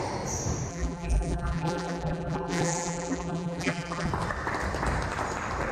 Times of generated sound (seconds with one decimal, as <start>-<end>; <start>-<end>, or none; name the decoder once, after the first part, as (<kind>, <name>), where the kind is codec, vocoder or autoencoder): 0.7-4.1 (vocoder, BigVGAN v2)